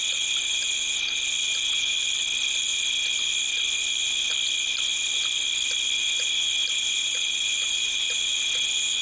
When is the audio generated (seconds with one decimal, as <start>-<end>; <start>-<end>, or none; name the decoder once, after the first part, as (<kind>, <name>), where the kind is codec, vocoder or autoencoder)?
6.6-8.2 (vocoder, BigVGAN v2)